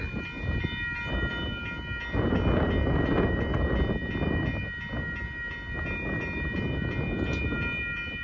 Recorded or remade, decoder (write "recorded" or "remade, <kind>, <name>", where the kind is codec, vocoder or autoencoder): recorded